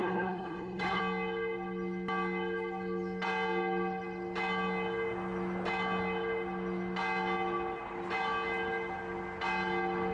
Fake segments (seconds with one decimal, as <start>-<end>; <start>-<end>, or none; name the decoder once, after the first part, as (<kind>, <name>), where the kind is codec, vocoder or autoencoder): 0.0-1.0 (codec, SNAC)